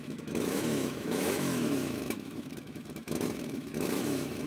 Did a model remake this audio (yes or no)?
yes